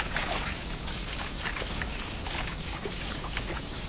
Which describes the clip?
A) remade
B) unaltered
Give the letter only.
A